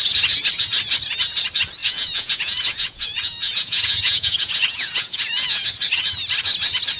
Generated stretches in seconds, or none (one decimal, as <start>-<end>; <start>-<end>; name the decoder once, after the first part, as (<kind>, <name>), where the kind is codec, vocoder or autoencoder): 1.8-5.7 (vocoder, Vocos)